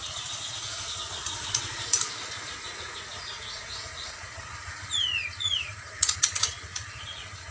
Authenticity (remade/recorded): remade